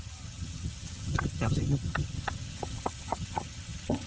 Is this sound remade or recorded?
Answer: remade